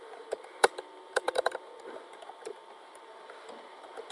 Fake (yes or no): yes